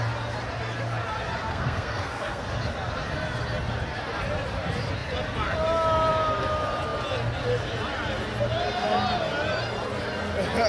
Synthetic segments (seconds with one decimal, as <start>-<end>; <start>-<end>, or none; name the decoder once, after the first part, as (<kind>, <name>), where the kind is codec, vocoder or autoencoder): 1.5-2.5 (codec, SNAC)